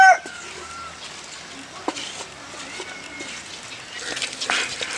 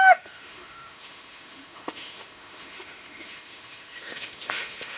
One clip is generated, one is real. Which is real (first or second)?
first